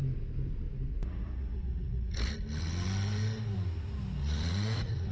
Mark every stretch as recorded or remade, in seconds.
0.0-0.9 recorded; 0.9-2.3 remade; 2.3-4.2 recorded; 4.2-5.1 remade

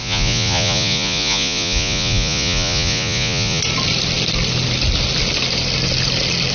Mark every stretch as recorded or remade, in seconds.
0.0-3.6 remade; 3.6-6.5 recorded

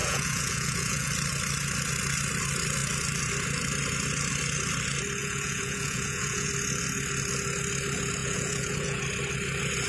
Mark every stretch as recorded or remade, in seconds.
0.0-1.1 remade; 1.1-5.2 recorded; 5.2-6.5 remade; 6.5-8.2 recorded; 8.2-9.0 remade; 9.0-9.9 recorded

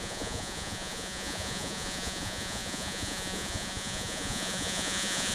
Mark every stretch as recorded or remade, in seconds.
0.0-5.3 remade

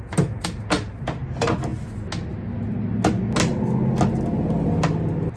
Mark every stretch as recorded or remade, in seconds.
0.0-5.4 recorded